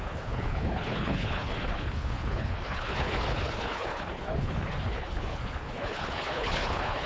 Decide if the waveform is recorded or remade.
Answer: remade